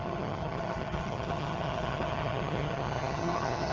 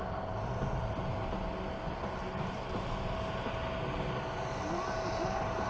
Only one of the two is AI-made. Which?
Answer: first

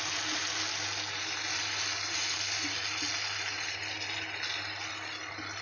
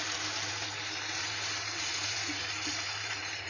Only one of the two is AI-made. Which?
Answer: second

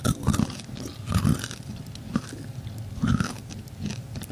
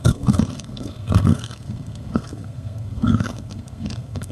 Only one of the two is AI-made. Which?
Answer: second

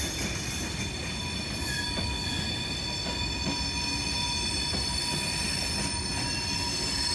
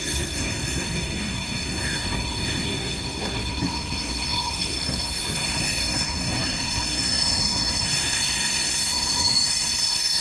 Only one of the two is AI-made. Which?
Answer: second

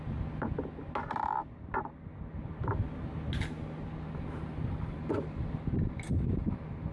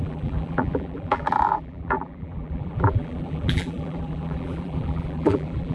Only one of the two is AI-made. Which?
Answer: second